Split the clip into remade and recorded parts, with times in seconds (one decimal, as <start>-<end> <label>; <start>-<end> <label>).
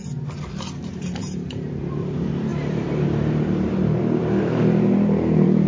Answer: 0.0-0.9 recorded; 0.9-5.7 remade